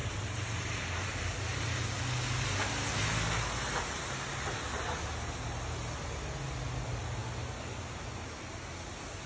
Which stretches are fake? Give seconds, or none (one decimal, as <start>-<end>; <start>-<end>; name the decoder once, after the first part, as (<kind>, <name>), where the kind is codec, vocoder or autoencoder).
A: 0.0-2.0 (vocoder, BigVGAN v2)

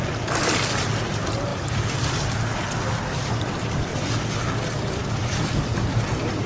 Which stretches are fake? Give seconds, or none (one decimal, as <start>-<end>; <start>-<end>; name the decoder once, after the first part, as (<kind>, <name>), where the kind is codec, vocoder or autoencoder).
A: 0.0-3.9 (vocoder, BigVGAN v2); 5.1-6.5

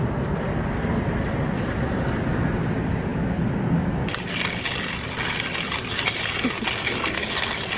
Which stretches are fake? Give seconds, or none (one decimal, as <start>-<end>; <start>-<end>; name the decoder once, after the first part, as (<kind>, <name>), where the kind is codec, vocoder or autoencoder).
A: none

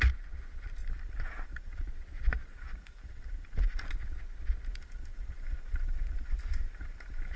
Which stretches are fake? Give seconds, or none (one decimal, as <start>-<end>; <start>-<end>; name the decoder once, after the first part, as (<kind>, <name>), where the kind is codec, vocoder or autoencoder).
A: 0.8-1.8 (vocoder, BigVGAN v2); 2.5-3.9; 4.7-7.4

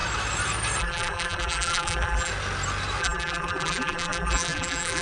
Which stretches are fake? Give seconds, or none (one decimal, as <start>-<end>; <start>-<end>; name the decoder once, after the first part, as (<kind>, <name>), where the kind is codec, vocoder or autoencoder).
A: 0.8-2.3 (vocoder, BigVGAN v2); 3.0-5.0

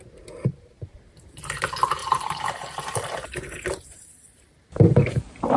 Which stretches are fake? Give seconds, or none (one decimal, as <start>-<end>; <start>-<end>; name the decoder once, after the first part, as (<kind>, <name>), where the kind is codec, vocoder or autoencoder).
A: 2.0-5.6 (vocoder, BigVGAN v2)

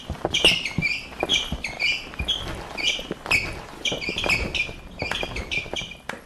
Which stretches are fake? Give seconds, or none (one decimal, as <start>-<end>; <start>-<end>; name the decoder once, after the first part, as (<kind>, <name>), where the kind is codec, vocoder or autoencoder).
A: 0.0-1.3 (vocoder, BigVGAN v2); 5.1-6.3

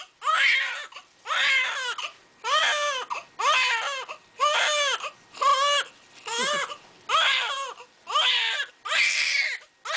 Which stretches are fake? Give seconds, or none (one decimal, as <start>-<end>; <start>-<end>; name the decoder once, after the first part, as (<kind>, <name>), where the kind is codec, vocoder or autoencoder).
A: none